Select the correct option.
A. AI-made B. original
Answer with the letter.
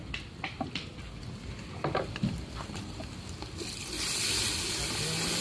B